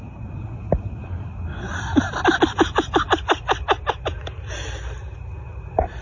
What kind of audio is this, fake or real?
real